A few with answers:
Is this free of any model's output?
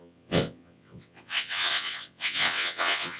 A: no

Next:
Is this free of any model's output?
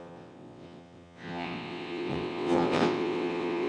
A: no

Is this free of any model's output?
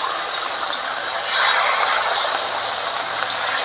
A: yes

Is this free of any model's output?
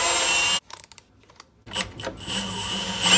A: yes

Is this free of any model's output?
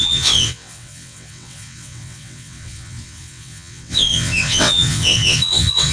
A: no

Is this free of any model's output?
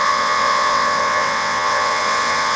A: no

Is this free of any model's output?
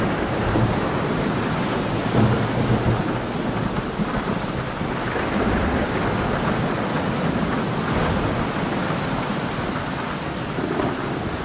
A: yes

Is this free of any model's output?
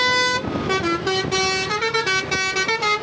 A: yes